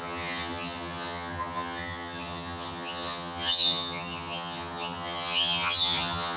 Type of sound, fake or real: fake